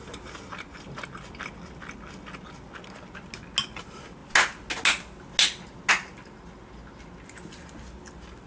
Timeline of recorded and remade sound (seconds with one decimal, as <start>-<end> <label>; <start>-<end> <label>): 0.0-8.5 recorded